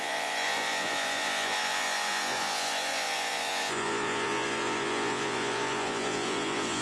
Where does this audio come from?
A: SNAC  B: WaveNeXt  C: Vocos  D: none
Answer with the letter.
C